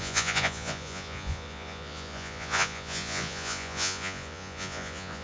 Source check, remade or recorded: remade